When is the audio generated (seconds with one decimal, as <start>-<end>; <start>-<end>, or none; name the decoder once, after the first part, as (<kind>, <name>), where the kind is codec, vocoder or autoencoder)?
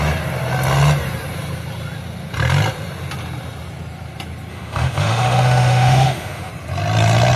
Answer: 4.5-6.5 (autoencoder, DAC-VAE)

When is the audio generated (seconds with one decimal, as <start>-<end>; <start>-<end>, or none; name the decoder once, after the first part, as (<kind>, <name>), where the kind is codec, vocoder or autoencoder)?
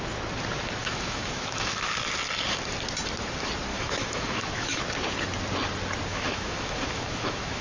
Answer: 0.8-1.9 (autoencoder, DAC-VAE); 3.7-4.8; 6.1-7.6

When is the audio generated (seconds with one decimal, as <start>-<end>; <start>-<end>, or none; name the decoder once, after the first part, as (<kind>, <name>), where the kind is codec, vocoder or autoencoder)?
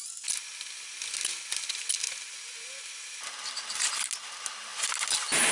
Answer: none